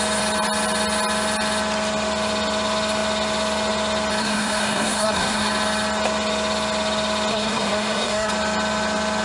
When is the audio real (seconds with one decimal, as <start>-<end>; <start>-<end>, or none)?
0.0-4.2; 5.5-7.3; 8.3-9.2